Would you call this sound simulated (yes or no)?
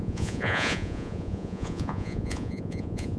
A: yes